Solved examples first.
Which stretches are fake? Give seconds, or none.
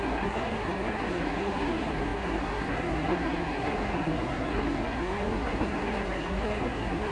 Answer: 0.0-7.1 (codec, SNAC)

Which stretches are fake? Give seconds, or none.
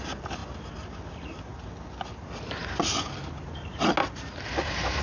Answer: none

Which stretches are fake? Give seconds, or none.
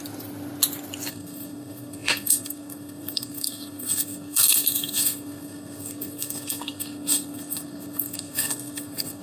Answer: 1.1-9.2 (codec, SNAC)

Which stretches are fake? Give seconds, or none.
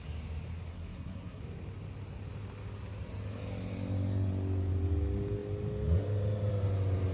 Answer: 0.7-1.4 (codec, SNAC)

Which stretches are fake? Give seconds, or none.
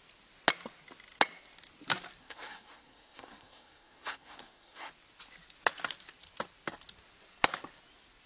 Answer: 2.2-4.9 (codec, SNAC)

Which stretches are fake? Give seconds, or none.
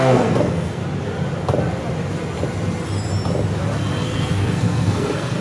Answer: 0.0-0.8 (codec, SNAC); 4.0-5.4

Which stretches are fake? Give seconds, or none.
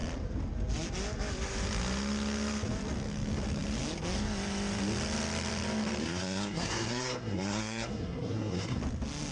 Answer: 6.0-8.8 (codec, SNAC)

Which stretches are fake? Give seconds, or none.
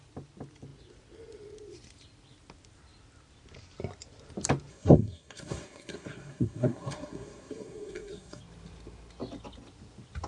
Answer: 4.7-8.4 (codec, SNAC)